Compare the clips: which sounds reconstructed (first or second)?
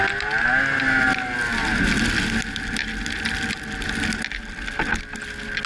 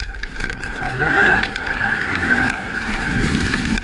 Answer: second